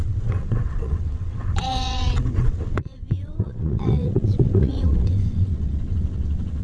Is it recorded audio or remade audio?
remade